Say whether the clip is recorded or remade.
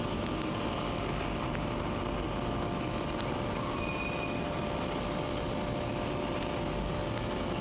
recorded